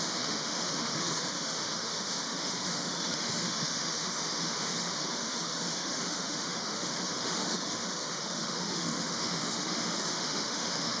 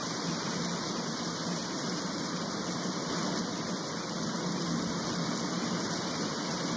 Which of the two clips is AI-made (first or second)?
first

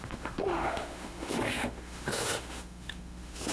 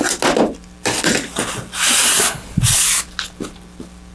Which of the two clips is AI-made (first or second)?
first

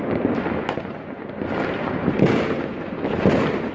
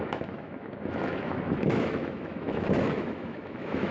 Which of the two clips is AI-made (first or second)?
second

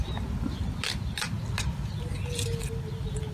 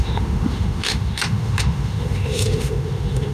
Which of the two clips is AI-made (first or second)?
second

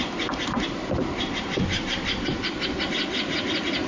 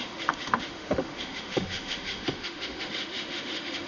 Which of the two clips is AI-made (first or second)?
second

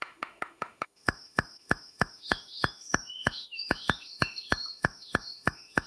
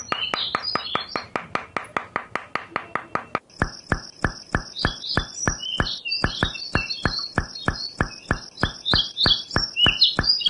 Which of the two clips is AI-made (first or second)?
first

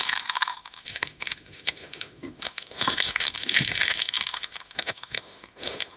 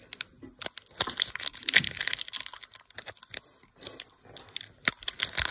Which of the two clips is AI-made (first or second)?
first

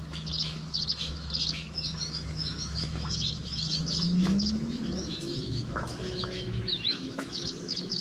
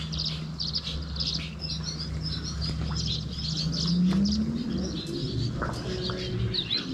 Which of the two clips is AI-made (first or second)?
first